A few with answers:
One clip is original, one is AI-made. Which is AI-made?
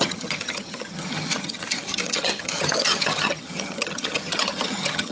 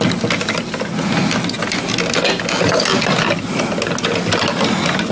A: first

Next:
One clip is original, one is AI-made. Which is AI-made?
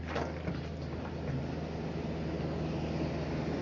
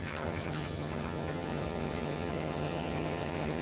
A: second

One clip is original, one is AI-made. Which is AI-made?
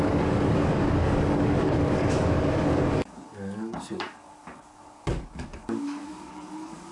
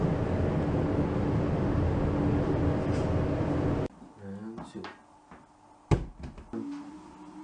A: first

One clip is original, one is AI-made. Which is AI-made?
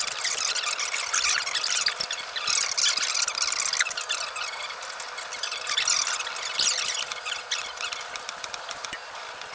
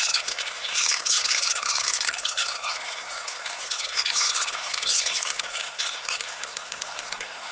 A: second